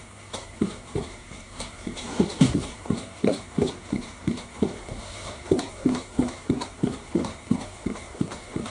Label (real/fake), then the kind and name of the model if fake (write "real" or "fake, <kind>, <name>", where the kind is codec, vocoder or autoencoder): fake, codec, SNAC